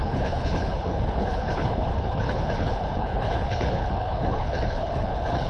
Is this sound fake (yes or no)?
yes